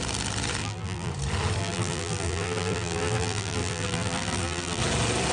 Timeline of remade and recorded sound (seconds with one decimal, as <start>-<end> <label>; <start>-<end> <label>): 0.0-0.6 recorded; 0.6-1.1 remade; 1.1-1.6 recorded; 1.6-4.8 remade; 4.8-5.3 recorded